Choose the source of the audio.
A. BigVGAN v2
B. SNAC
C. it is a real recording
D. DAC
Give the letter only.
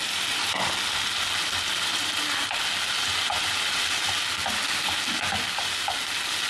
C